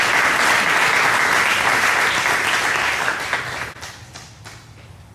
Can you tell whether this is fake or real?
real